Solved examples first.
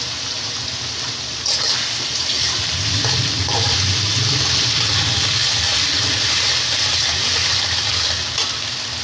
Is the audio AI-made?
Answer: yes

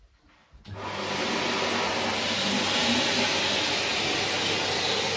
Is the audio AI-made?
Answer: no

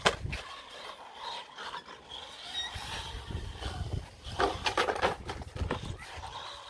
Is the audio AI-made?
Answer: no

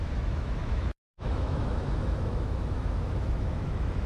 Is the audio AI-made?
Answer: yes